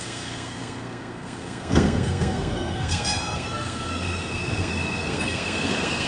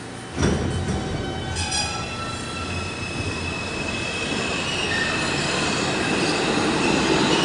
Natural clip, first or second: second